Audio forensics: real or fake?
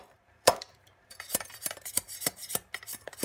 fake